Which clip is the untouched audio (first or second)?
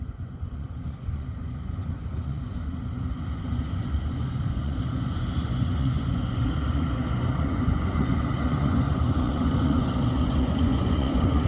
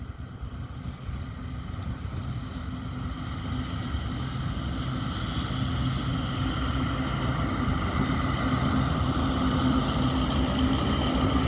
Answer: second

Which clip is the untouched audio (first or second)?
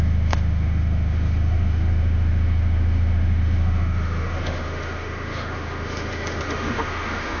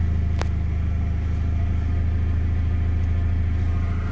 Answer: second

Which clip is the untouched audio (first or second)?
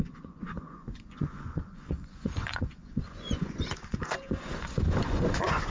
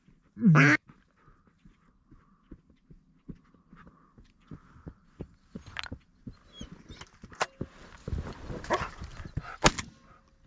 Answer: second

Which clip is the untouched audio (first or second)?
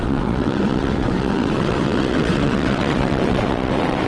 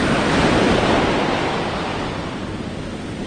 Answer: second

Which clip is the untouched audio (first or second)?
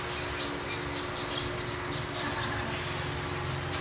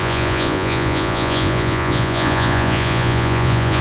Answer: first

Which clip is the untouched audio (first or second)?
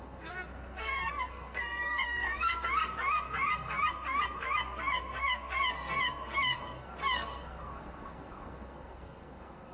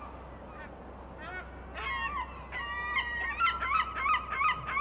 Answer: second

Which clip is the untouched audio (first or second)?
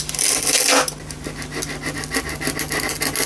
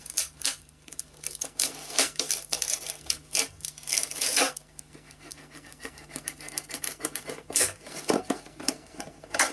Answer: first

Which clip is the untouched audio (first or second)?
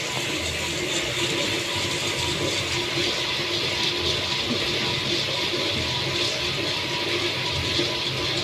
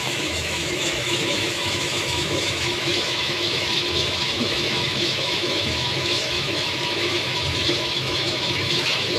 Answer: first